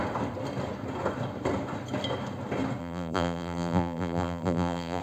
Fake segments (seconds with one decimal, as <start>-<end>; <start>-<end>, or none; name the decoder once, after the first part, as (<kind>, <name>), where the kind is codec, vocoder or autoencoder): 2.8-5.0 (vocoder, BigVGAN v2)